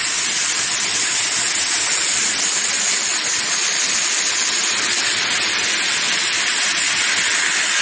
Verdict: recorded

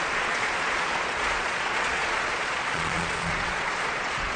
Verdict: remade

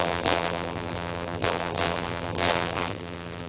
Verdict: remade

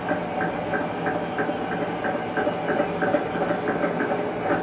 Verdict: recorded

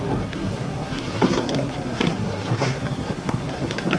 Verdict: remade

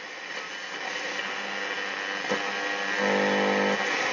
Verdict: recorded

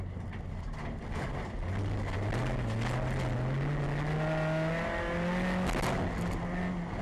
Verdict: recorded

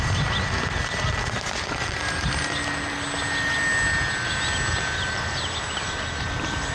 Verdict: recorded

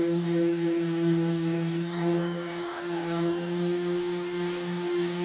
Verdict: remade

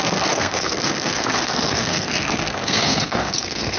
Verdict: remade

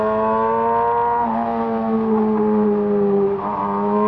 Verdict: recorded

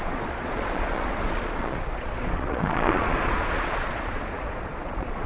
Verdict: remade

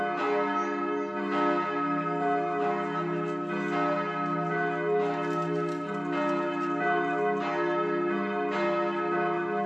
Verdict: recorded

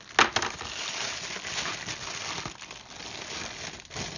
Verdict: recorded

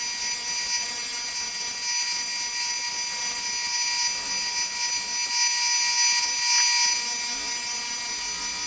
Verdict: recorded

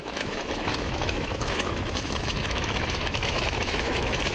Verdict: remade